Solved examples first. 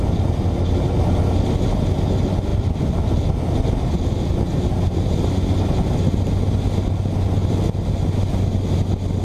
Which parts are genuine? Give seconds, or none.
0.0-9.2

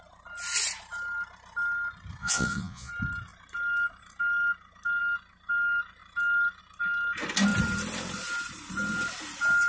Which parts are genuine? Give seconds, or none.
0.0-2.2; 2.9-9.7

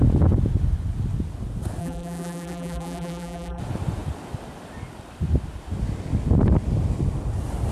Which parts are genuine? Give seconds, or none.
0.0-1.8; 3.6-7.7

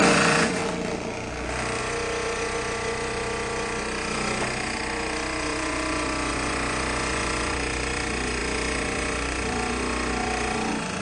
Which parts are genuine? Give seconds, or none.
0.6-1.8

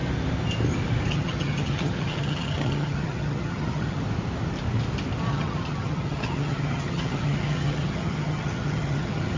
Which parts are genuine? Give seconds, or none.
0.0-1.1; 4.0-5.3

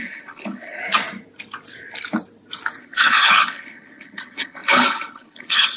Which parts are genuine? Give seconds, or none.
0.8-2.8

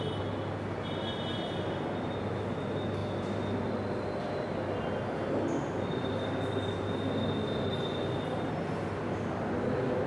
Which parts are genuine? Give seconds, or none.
0.0-10.1

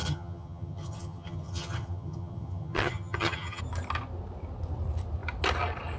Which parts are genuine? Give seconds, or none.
3.6-6.0